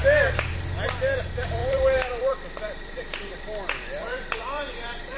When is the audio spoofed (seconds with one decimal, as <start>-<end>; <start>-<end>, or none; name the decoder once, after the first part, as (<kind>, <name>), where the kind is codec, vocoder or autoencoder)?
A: 1.2-5.2 (vocoder, BigVGAN v2)